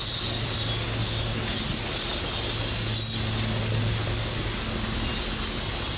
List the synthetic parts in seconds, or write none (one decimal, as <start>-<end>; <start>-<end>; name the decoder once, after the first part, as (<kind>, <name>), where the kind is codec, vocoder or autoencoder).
none